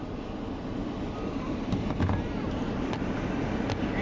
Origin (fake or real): real